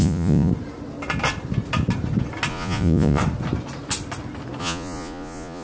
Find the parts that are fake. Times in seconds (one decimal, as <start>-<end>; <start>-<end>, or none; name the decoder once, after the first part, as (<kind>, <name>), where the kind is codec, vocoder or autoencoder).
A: 0.0-0.5 (vocoder, Vocos); 2.5-3.2; 4.6-5.6